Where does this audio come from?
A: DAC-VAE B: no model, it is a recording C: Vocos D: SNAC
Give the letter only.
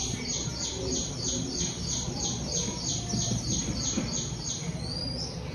B